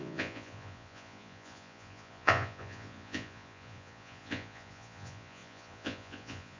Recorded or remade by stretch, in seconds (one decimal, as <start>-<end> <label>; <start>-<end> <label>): 0.0-6.6 remade